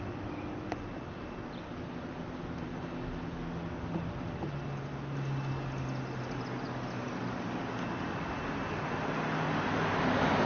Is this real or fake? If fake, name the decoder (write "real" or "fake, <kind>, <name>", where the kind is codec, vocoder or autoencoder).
real